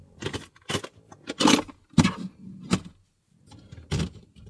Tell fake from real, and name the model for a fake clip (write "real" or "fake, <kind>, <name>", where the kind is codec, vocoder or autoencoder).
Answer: real